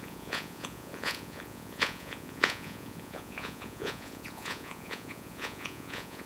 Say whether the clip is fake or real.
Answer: fake